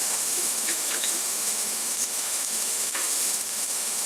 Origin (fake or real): fake